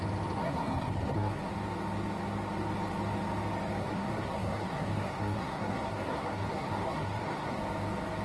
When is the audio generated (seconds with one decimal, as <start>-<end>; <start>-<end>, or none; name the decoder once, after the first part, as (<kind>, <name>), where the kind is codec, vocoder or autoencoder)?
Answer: 0.4-1.5 (codec, SNAC); 3.8-7.6